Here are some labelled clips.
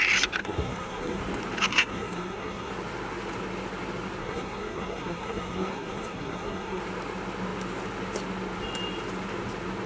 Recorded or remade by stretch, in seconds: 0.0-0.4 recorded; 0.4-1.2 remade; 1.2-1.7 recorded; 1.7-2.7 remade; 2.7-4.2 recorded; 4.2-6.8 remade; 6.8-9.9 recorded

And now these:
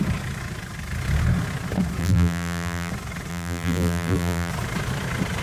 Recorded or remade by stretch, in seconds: 0.0-2.0 recorded; 2.0-2.9 remade; 2.9-3.3 recorded; 3.3-4.5 remade; 4.5-5.4 recorded